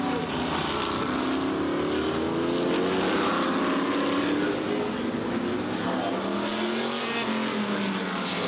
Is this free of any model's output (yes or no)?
yes